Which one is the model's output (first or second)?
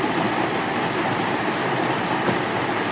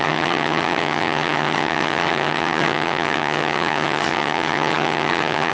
second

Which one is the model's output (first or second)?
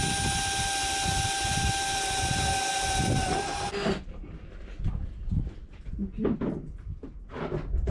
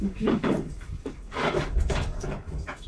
second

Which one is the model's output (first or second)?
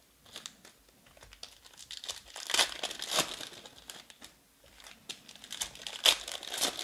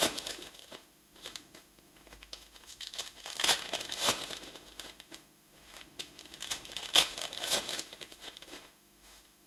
second